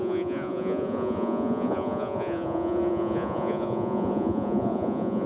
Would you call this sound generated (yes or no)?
yes